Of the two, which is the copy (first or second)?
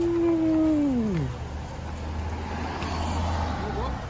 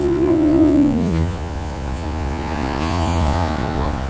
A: second